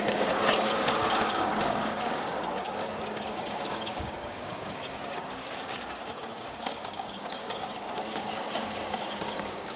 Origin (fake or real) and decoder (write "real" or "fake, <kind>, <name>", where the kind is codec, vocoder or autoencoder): fake, codec, DAC